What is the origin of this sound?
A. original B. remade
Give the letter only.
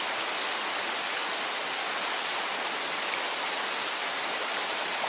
A